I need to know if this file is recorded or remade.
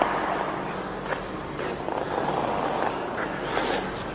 recorded